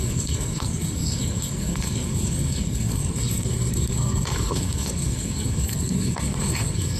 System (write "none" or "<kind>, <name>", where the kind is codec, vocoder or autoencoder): codec, SNAC